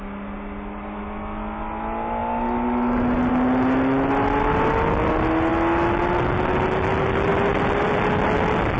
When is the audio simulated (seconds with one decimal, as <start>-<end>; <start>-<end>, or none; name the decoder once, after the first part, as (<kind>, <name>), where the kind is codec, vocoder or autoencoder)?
none